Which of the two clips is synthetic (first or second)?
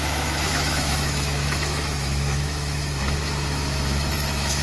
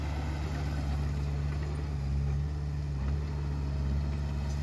first